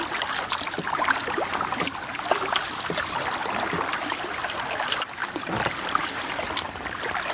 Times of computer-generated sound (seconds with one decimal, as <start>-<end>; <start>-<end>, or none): none